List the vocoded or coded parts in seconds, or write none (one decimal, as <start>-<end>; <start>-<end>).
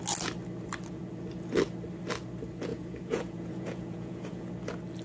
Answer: 2.7-4.5